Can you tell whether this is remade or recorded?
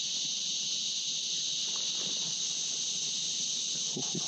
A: recorded